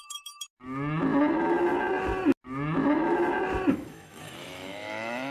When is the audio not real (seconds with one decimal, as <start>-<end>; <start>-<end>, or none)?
0.0-0.5; 3.7-5.3